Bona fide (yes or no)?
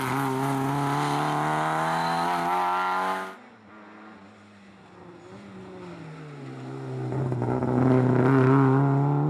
yes